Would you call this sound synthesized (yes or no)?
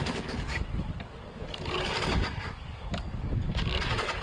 yes